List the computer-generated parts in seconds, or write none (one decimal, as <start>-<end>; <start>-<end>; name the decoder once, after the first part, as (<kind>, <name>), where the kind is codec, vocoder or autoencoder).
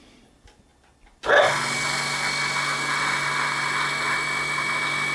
none